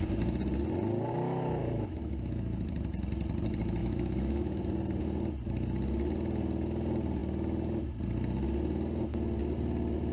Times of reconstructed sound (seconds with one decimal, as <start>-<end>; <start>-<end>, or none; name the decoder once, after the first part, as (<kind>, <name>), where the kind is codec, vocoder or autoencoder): 1.6-2.7 (autoencoder, DAC-VAE); 3.8-4.6